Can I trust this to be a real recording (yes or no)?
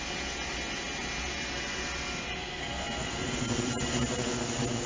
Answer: yes